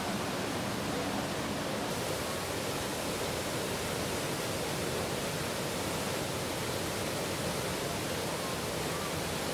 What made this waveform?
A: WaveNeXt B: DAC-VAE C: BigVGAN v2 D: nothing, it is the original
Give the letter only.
D